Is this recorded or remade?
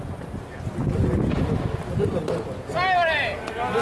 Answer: recorded